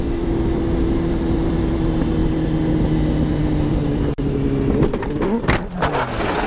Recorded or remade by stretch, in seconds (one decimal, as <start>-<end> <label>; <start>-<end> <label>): 0.0-3.7 recorded; 3.7-4.3 remade; 4.3-6.5 recorded